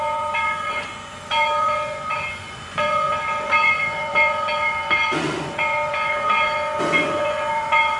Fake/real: fake